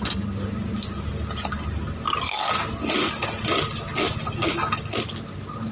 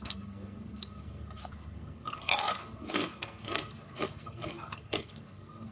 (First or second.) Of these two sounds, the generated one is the second